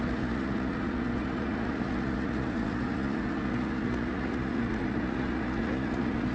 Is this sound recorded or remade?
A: remade